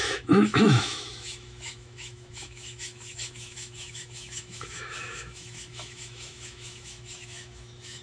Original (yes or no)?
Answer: no